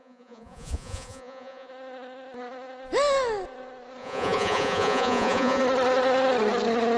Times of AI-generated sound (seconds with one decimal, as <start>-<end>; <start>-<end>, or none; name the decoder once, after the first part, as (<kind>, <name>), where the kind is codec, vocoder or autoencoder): 0.0-1.7 (vocoder, Vocos); 4.0-5.6